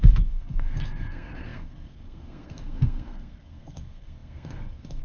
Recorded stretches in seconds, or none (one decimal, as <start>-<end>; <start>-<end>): none